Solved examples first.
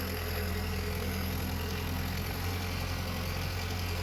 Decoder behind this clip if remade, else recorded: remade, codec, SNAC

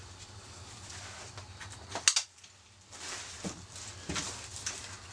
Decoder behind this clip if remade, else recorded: recorded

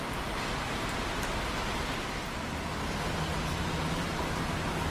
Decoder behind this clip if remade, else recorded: recorded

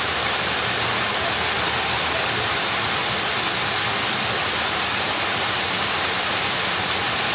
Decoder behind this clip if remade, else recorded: recorded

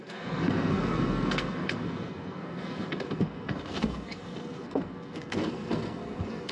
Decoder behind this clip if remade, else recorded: remade, codec, SNAC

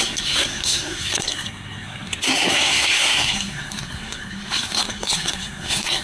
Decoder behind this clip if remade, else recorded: remade, codec, SNAC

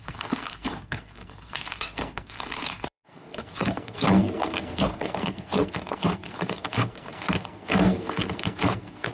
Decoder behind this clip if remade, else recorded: remade, codec, SNAC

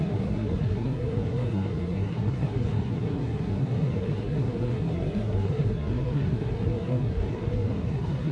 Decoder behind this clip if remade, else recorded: remade, codec, SNAC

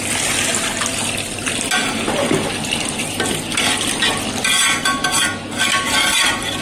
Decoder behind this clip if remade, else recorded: recorded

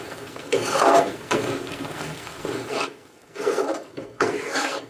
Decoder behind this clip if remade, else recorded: remade, codec, SNAC